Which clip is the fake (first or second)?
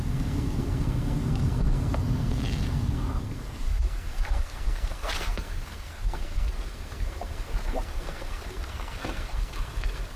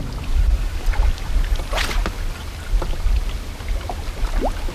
first